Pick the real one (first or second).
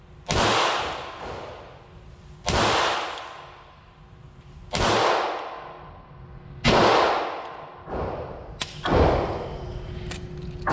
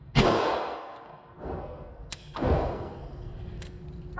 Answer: first